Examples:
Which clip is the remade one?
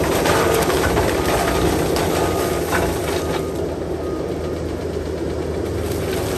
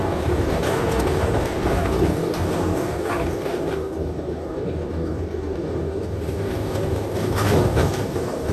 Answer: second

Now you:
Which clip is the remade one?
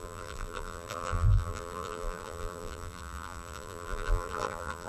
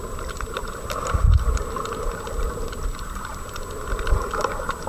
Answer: first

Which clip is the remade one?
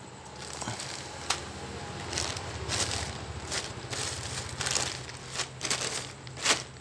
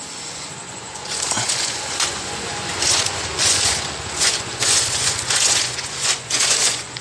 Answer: second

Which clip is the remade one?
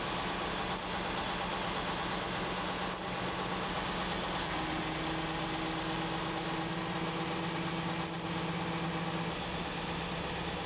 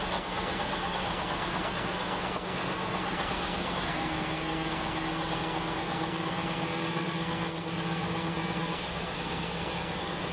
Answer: second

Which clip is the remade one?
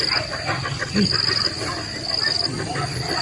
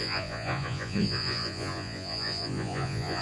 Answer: second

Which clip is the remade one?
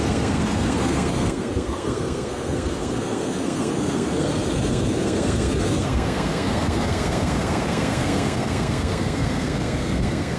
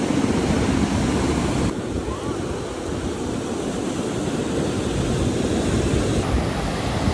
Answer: first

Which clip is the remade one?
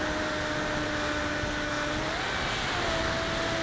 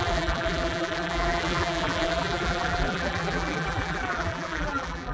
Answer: second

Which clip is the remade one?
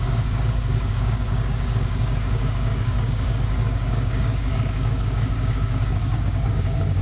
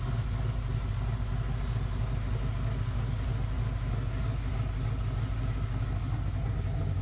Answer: first